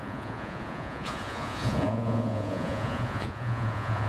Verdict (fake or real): fake